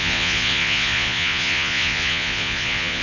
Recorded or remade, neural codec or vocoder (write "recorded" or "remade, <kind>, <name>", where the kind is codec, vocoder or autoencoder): remade, vocoder, Vocos